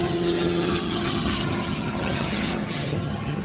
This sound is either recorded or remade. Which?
remade